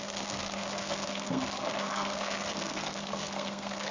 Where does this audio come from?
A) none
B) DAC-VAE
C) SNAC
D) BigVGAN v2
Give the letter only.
C